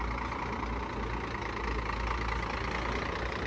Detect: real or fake real